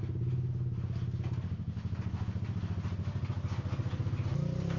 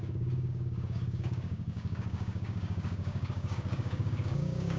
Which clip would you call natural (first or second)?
first